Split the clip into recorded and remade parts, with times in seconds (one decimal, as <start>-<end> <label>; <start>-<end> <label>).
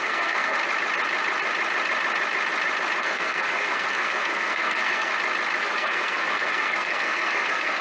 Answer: 0.0-0.6 remade; 0.6-3.0 recorded; 3.0-5.1 remade; 5.1-5.6 recorded; 5.6-7.8 remade